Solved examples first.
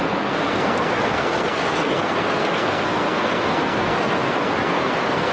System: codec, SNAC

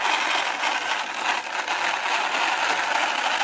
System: none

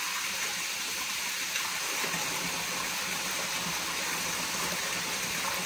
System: none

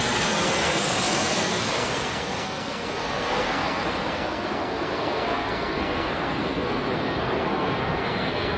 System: codec, SNAC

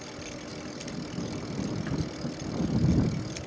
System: none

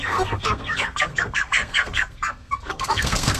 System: codec, SNAC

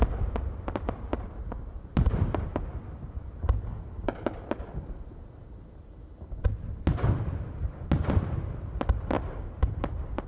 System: none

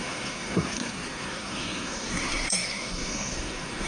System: codec, SNAC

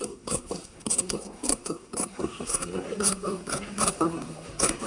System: codec, SNAC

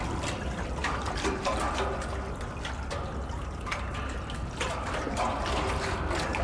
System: none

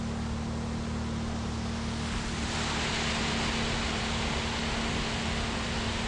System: none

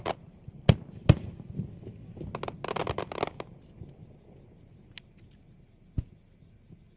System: none